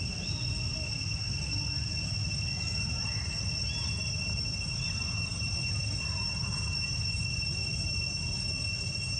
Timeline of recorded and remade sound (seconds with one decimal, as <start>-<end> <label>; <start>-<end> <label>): 0.0-9.2 recorded